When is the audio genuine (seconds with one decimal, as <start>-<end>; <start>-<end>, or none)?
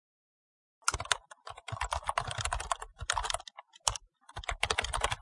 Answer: 0.0-5.2